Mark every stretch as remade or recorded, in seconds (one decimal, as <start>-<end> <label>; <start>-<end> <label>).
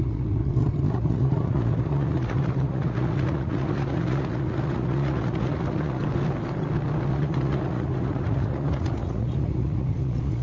0.0-0.4 remade; 0.4-0.9 recorded; 0.9-6.0 remade; 6.0-7.1 recorded; 7.1-10.4 remade